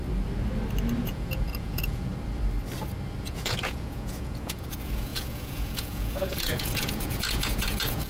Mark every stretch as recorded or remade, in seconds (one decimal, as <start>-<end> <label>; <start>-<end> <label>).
0.0-1.0 recorded; 1.0-2.1 remade; 2.1-3.2 recorded; 3.2-8.1 remade